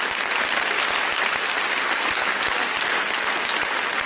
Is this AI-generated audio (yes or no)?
no